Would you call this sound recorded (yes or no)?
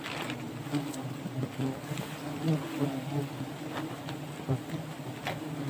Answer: yes